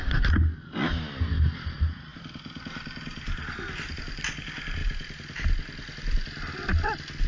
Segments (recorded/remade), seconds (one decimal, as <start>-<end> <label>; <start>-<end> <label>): 0.0-7.3 recorded